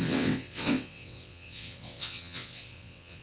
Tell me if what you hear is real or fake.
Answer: fake